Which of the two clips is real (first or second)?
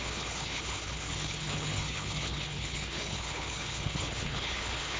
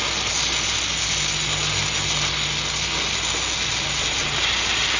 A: second